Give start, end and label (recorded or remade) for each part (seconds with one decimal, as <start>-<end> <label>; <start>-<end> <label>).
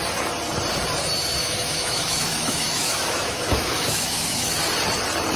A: 0.0-1.4 recorded; 1.4-4.6 remade; 4.6-5.4 recorded